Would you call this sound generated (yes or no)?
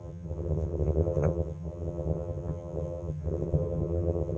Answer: yes